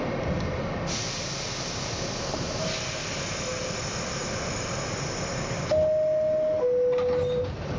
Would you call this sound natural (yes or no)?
yes